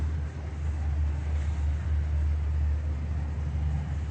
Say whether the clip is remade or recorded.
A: recorded